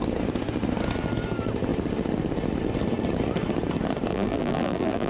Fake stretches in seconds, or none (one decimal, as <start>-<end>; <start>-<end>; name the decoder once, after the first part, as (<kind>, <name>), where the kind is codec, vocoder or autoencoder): 4.1-5.1 (vocoder, BigVGAN v2)